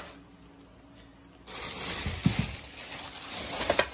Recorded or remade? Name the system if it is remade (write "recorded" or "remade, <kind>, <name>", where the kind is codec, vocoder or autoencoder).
recorded